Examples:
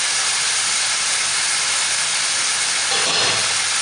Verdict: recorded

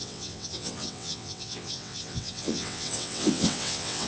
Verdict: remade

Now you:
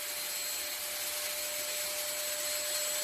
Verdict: recorded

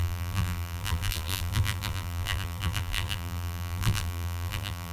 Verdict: remade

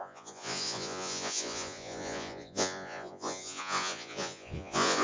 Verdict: remade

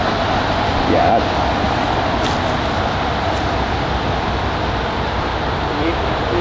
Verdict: recorded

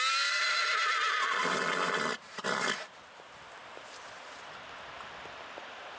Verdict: recorded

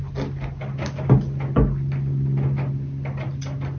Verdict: recorded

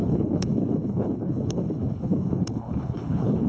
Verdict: remade